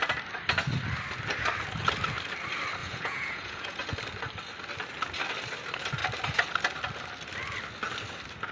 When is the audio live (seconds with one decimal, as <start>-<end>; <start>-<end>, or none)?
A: 0.0-2.8; 3.8-8.5